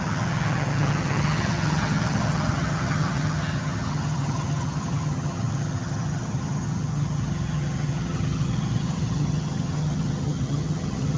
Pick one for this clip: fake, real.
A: fake